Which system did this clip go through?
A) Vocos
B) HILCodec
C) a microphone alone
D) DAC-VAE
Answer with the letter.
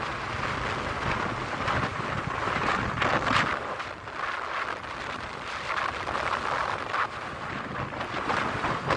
C